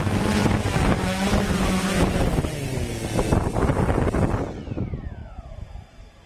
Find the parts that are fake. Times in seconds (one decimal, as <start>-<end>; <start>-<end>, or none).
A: 5.2-6.3